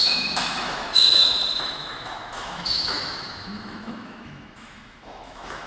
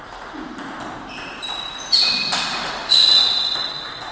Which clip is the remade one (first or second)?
first